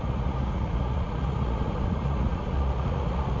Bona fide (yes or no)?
no